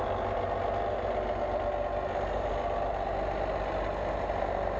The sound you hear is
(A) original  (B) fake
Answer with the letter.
A